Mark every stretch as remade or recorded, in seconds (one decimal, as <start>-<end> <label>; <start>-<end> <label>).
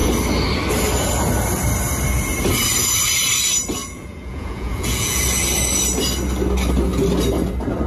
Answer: 0.0-3.8 recorded; 3.8-5.2 remade; 5.2-7.9 recorded